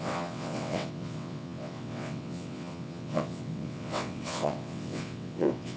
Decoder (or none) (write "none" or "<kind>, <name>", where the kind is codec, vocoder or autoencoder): vocoder, WaveNeXt